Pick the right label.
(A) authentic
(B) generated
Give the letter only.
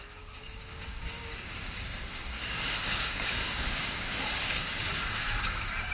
B